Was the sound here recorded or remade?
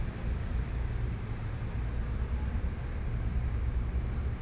recorded